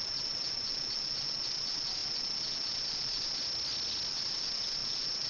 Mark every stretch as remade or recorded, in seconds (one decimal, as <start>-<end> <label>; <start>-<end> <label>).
0.0-3.4 remade; 3.4-4.1 recorded; 4.1-5.3 remade